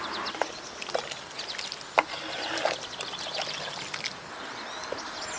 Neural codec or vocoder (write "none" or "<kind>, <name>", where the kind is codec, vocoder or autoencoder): none